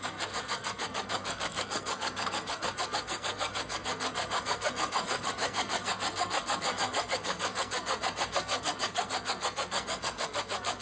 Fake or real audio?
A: fake